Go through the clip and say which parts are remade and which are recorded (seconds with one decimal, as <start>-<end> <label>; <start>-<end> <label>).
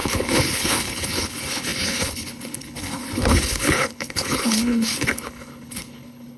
0.0-6.4 remade